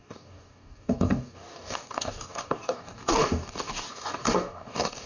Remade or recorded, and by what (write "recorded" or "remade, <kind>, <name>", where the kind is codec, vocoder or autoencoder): remade, codec, DAC